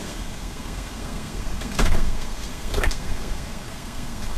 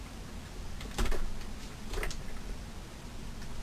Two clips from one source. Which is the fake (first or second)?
first